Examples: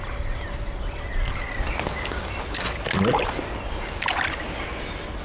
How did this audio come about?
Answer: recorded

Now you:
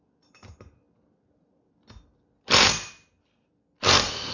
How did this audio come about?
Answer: recorded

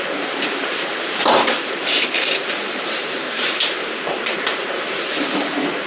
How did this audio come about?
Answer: remade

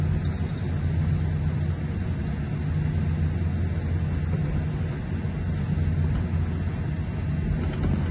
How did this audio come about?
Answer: recorded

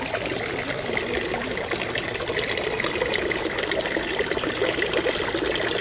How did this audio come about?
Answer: recorded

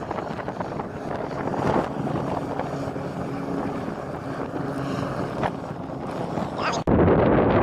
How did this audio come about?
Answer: recorded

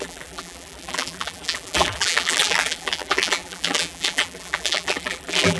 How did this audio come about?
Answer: remade